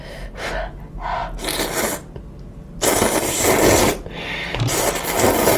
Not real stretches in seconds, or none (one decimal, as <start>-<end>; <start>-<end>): none